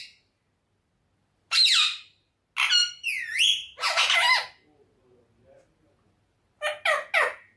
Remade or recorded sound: recorded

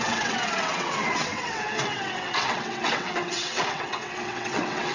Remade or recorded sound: remade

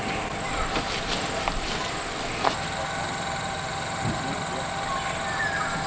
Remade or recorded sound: recorded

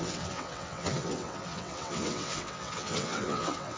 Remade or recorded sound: remade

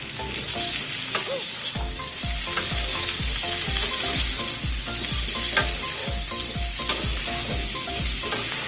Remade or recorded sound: recorded